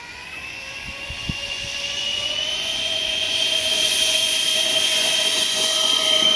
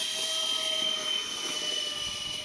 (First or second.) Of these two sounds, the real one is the second